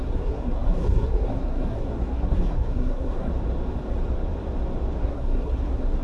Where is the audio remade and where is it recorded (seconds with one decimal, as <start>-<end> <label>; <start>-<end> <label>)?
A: 0.0-3.3 remade; 3.3-5.0 recorded; 5.0-6.0 remade